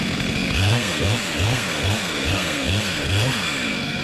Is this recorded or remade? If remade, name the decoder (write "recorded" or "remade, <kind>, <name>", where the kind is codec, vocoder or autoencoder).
remade, codec, SNAC